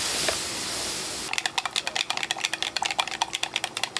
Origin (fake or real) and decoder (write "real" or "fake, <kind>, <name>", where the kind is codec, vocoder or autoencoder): real